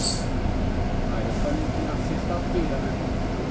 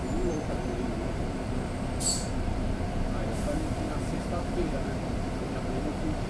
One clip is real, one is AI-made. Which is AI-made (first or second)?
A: second